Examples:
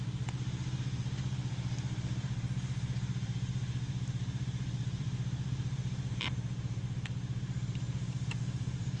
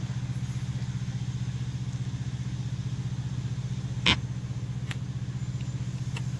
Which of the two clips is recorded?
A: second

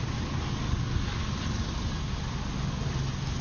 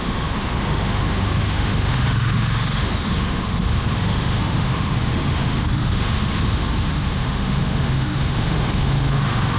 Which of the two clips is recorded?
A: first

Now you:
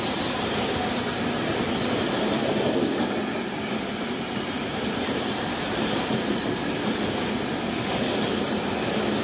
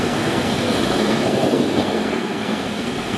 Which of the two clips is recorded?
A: first